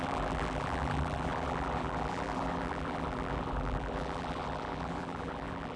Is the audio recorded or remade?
remade